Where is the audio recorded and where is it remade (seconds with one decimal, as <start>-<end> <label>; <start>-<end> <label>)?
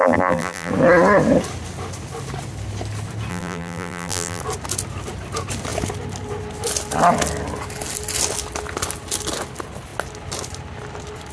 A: 0.0-0.7 remade; 0.7-3.3 recorded; 3.3-4.4 remade; 4.4-11.3 recorded